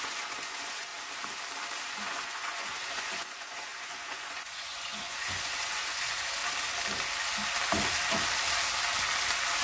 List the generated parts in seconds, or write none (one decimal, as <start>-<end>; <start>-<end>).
0.0-0.9; 1.9-6.4